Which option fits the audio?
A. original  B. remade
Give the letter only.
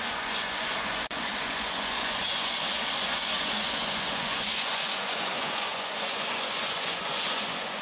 B